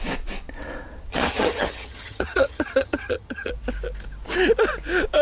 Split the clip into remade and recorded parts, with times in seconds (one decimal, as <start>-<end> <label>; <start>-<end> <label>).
0.0-1.1 recorded; 1.1-3.5 remade; 3.5-5.2 recorded